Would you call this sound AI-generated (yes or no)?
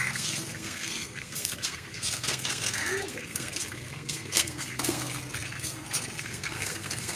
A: yes